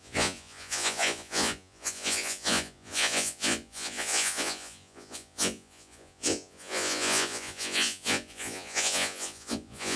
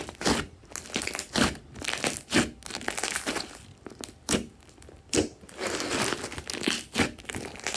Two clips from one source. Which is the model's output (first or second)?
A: first